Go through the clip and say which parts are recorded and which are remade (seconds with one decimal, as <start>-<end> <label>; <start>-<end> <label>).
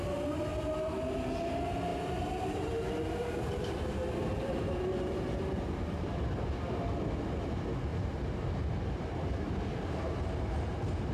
0.0-1.9 recorded; 1.9-5.6 remade; 5.6-7.9 recorded; 7.9-9.9 remade; 9.9-11.1 recorded